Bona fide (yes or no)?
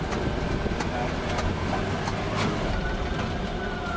yes